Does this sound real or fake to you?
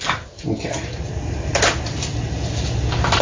fake